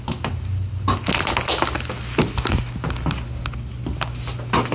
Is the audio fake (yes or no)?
no